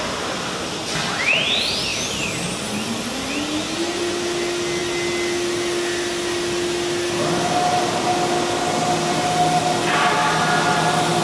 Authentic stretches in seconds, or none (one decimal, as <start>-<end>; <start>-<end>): 0.0-11.2